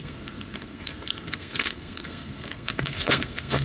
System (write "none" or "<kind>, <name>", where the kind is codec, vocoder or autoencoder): codec, SNAC